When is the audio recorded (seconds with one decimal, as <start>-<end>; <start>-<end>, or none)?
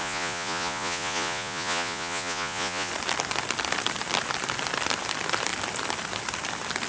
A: 2.9-6.9